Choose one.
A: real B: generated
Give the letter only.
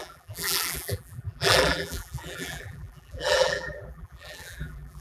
B